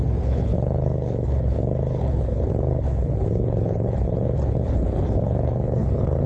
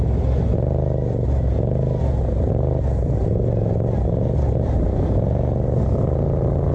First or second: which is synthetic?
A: first